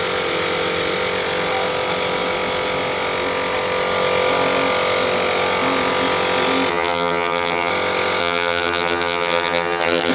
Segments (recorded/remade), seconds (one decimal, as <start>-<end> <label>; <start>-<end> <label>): 0.0-6.7 recorded; 6.7-7.7 remade; 7.7-8.2 recorded; 8.2-10.1 remade